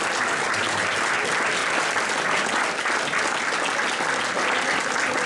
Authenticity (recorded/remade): recorded